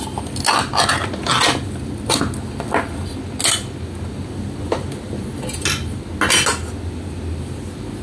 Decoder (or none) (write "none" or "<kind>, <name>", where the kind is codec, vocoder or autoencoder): none